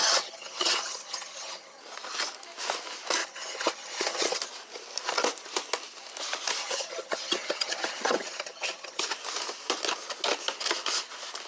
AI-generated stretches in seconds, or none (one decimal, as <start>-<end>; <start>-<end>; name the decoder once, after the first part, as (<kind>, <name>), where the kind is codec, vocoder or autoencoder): 0.0-1.8 (vocoder, HiFi-GAN); 3.2-4.4; 6.6-9.0